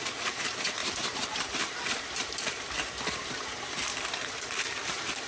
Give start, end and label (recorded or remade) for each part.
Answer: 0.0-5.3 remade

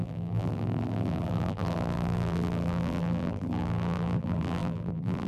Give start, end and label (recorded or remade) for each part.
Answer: 0.0-5.3 remade

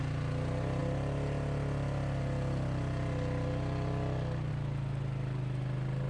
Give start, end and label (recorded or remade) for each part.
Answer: 0.0-6.1 recorded

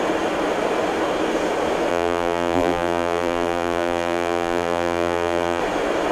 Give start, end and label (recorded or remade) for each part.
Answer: 0.0-1.9 recorded; 1.9-5.6 remade; 5.6-6.1 recorded

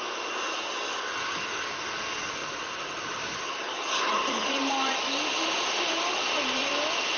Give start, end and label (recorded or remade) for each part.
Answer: 0.0-2.4 recorded; 2.4-6.7 remade; 6.7-7.2 recorded